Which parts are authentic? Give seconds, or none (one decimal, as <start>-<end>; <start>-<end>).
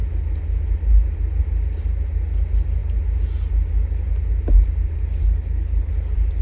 0.0-5.2; 5.9-6.4